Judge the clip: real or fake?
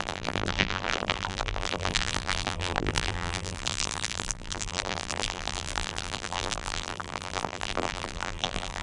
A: fake